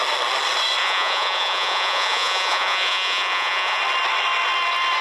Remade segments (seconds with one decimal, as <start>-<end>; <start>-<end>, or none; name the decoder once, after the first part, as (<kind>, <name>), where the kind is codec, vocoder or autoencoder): 0.8-3.8 (vocoder, Vocos)